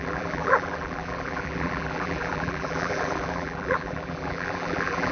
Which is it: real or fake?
fake